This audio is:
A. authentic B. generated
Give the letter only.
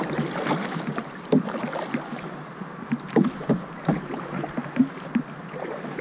A